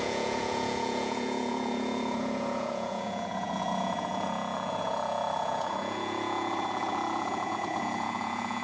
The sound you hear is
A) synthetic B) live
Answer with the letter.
A